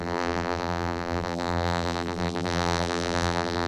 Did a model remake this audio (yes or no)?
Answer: yes